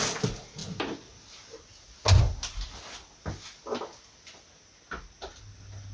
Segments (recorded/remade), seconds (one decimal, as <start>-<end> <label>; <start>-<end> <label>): 0.0-5.9 recorded